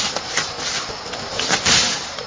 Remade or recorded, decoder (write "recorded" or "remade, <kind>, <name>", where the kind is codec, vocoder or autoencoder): recorded